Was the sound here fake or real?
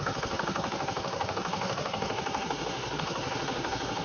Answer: fake